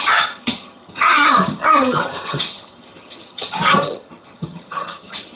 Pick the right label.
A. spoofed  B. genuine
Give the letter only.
A